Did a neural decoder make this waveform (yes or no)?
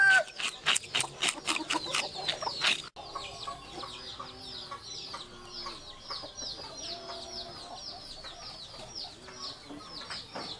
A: no